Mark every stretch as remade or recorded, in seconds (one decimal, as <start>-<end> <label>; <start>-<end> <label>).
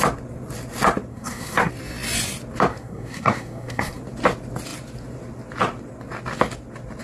0.0-1.1 recorded; 1.1-1.7 remade; 1.7-2.7 recorded; 2.7-4.0 remade; 4.0-7.0 recorded